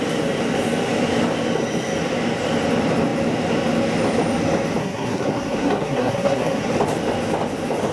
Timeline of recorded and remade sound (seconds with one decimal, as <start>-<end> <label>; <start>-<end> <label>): 0.0-4.8 recorded; 4.8-6.7 remade; 6.7-7.9 recorded